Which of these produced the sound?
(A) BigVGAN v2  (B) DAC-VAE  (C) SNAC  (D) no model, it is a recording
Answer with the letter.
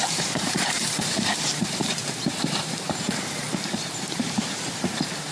A